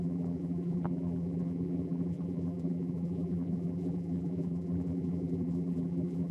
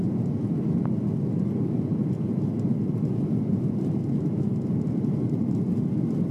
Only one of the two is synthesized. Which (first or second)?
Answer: first